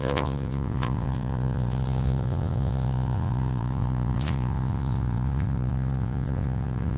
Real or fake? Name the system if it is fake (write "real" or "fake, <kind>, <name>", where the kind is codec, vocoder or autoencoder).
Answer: fake, vocoder, Vocos